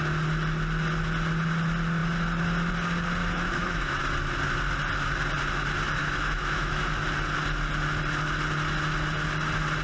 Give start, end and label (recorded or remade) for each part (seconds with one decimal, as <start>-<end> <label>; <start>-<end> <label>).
0.0-3.2 recorded; 3.2-4.0 remade; 4.0-6.0 recorded; 6.0-6.8 remade; 6.8-9.8 recorded